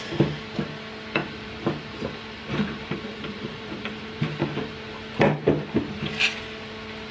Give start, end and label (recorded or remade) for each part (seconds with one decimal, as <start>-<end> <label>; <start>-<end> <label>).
0.0-1.2 recorded; 1.2-4.9 remade; 4.9-7.1 recorded